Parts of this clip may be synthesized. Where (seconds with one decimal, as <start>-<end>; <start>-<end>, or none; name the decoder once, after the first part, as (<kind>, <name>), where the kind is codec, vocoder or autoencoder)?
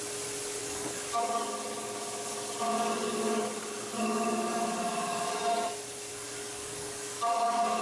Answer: 0.6-5.3 (codec, DAC); 6.1-7.8